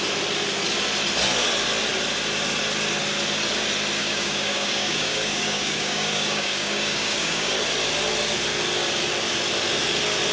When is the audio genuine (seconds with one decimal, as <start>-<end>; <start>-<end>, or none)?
0.0-4.0; 7.5-10.3